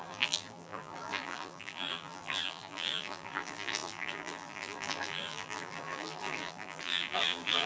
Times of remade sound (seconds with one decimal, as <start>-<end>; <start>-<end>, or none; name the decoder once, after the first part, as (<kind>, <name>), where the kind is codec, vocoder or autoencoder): 0.0-7.7 (vocoder, BigVGAN v2)